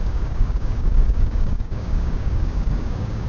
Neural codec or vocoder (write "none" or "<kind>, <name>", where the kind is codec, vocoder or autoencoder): codec, DAC